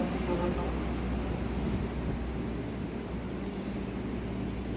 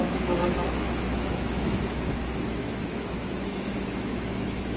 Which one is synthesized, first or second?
second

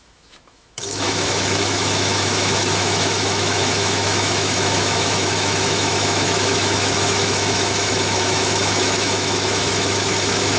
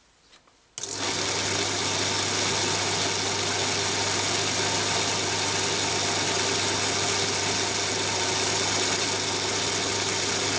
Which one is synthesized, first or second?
first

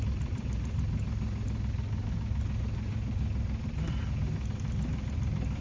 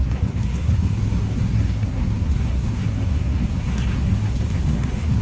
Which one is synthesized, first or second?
second